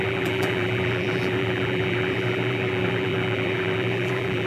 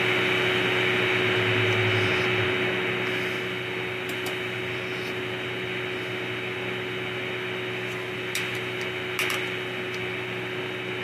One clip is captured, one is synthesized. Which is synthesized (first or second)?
first